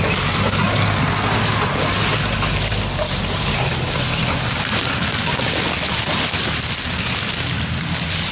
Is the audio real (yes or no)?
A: yes